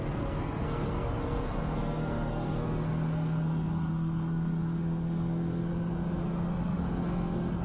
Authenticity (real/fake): fake